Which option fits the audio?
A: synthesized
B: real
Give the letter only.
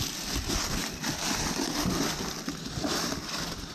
B